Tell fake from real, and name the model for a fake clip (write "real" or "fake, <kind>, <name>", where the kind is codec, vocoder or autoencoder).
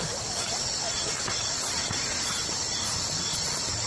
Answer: real